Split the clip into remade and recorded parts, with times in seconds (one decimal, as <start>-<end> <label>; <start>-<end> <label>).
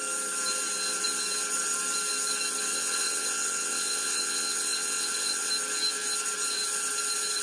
0.0-2.7 recorded; 2.7-5.5 remade; 5.5-7.4 recorded